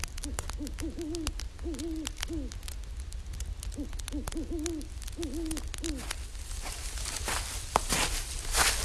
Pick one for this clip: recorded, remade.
recorded